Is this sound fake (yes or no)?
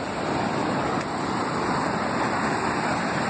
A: yes